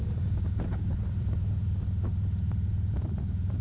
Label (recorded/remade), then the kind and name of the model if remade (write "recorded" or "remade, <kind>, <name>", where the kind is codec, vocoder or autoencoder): remade, vocoder, BigVGAN v2